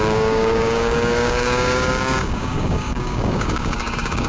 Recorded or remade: remade